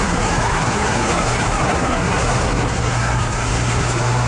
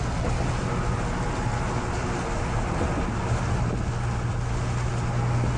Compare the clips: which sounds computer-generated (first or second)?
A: first